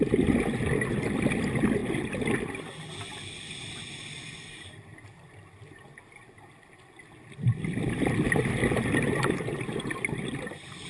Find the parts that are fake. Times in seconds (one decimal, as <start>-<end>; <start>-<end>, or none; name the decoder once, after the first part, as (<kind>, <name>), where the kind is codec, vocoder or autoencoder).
none